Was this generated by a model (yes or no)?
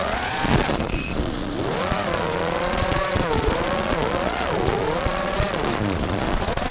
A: yes